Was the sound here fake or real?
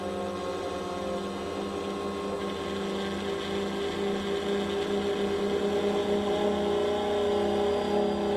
real